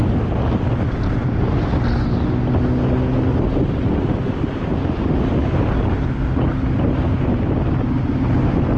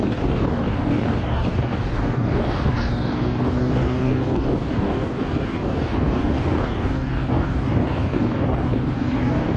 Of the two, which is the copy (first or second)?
second